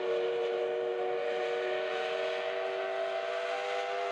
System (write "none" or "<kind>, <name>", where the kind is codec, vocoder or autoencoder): none